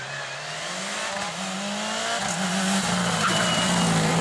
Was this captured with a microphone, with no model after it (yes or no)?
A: yes